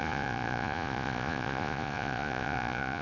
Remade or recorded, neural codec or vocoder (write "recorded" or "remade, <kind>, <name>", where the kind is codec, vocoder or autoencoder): remade, vocoder, Vocos